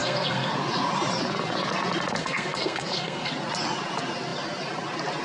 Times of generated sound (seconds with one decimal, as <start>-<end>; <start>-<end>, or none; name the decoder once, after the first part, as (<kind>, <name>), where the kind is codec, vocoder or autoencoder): 0.0-0.5 (codec, SNAC); 2.2-3.3